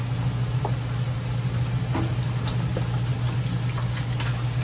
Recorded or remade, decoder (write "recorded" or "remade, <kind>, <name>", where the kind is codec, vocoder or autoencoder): recorded